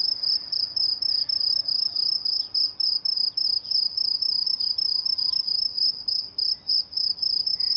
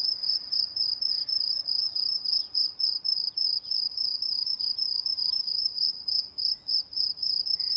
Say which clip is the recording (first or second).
first